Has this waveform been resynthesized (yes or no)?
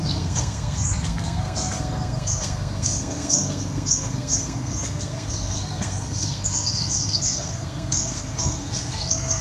yes